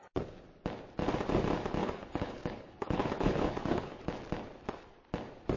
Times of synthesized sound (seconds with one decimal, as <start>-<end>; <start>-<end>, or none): 1.8-4.0